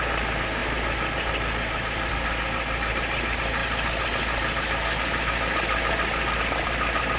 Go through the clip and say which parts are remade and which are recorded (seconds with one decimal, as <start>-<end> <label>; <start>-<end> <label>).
0.0-7.2 recorded